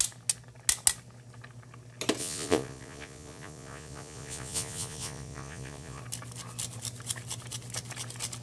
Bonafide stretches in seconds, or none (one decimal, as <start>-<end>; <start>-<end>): 0.0-2.2; 6.0-8.4